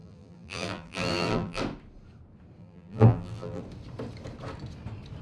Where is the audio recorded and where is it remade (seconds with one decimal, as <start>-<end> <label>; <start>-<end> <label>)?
0.0-1.6 remade; 1.6-2.6 recorded; 2.6-3.6 remade; 3.6-5.2 recorded